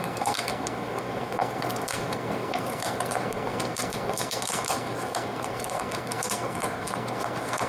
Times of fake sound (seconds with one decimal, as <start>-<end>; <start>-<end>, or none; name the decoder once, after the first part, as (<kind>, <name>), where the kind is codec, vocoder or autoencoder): 0.0-7.7 (codec, SNAC)